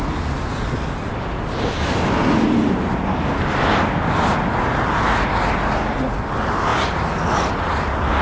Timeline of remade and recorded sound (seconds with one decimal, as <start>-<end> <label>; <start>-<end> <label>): 0.0-8.2 recorded